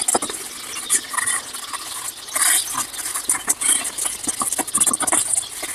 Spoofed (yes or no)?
no